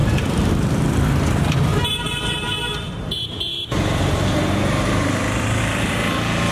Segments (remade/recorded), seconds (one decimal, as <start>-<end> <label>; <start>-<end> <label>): 0.0-0.5 remade; 0.5-1.7 recorded; 1.7-5.6 remade; 5.6-6.5 recorded